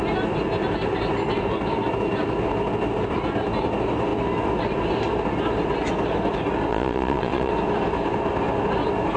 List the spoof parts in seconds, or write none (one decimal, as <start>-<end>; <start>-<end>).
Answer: 6.7-7.5